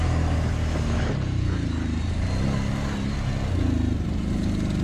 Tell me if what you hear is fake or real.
real